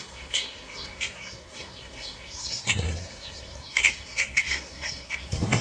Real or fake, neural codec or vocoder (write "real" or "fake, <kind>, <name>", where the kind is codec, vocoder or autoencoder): fake, codec, SNAC